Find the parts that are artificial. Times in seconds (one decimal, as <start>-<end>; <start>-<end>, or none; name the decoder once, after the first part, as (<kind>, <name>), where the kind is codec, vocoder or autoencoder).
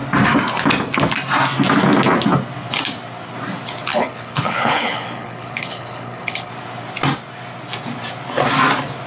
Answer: 3.9-6.5 (codec, HILCodec)